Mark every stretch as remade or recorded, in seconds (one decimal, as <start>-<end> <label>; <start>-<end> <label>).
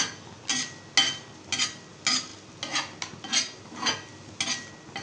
0.0-5.0 recorded